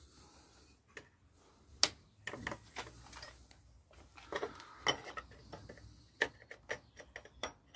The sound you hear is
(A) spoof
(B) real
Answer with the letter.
B